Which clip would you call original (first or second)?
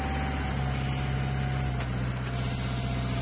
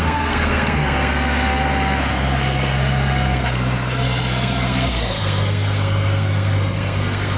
first